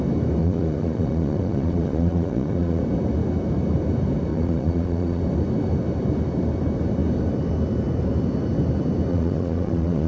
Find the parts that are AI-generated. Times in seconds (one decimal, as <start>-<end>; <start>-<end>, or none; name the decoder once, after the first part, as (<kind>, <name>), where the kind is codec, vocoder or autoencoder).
0.4-2.8 (vocoder, Vocos); 4.3-5.2; 9.1-10.1